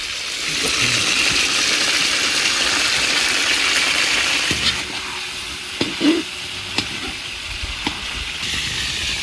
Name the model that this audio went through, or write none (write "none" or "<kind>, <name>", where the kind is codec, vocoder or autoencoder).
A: vocoder, BigVGAN v2